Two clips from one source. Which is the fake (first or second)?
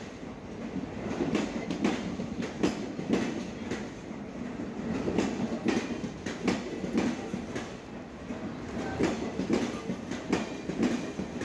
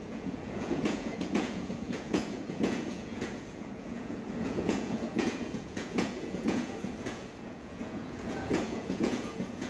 second